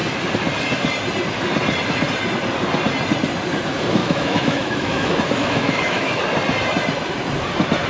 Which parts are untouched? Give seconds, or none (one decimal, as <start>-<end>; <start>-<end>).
0.0-4.0; 6.2-7.9